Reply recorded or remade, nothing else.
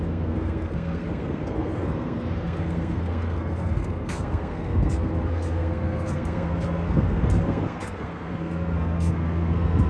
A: remade